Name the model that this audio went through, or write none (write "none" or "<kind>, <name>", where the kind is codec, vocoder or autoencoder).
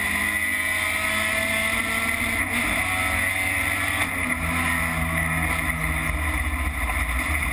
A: none